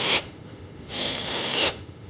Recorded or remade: remade